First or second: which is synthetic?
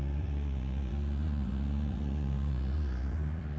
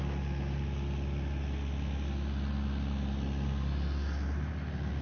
first